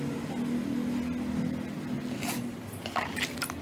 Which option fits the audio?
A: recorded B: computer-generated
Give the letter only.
A